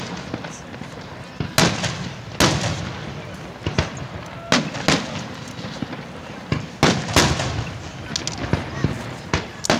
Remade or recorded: recorded